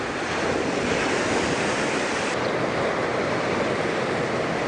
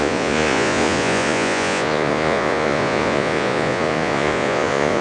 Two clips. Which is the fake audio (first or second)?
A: second